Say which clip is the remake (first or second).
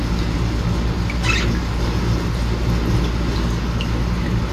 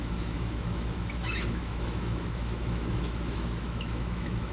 second